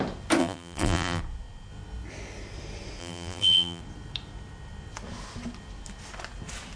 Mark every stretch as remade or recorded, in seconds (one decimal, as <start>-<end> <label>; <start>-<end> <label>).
0.0-0.4 recorded; 0.4-1.2 remade; 1.2-3.0 recorded; 3.0-3.8 remade; 3.8-6.8 recorded